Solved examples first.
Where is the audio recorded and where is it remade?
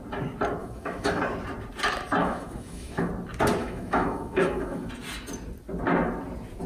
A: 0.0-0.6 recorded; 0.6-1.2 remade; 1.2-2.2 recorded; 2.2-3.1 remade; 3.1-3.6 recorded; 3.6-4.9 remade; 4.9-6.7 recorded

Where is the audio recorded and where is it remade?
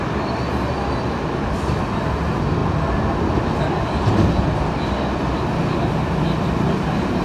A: 0.0-7.2 recorded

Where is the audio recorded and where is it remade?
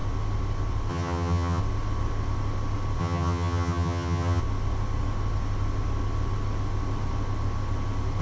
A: 0.0-0.9 recorded; 0.9-1.6 remade; 1.6-3.0 recorded; 3.0-4.4 remade; 4.4-8.2 recorded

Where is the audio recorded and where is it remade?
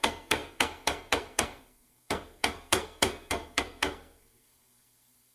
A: 0.0-5.3 remade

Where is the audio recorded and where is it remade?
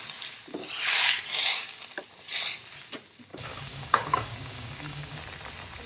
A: 0.0-0.9 recorded; 0.9-1.8 remade; 1.8-3.3 recorded; 3.3-5.2 remade; 5.2-5.9 recorded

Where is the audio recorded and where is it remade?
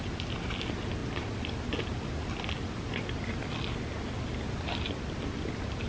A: 0.0-5.9 recorded